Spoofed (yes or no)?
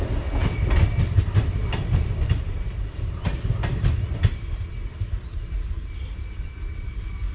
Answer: no